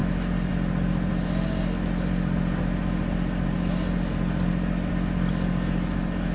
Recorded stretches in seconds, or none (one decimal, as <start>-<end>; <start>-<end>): 0.0-6.3